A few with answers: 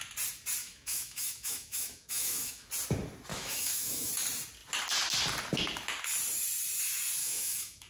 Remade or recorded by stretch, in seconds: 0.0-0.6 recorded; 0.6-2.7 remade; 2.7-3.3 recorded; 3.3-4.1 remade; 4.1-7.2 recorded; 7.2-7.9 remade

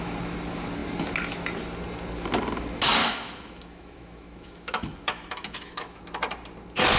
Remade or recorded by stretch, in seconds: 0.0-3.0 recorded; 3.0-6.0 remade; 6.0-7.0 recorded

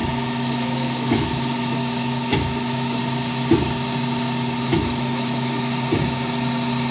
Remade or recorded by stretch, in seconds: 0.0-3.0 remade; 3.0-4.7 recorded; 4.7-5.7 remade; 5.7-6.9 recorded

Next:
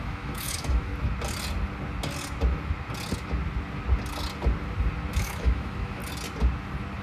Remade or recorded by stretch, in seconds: 0.0-0.9 remade; 0.9-5.1 recorded; 5.1-6.0 remade; 6.0-7.0 recorded

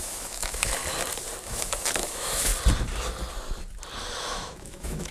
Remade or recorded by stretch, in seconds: 0.0-0.8 remade; 0.8-1.4 recorded; 1.4-2.5 remade; 2.5-4.3 recorded; 4.3-5.1 remade

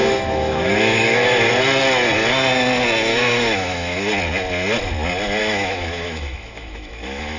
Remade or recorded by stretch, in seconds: 0.0-1.5 remade; 1.5-3.1 recorded; 3.1-4.1 remade; 4.1-5.4 recorded; 5.4-7.4 remade